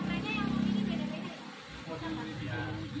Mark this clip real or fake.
real